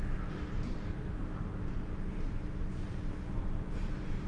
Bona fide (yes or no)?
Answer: yes